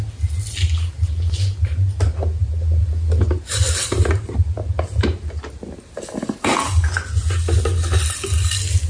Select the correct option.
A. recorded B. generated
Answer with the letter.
A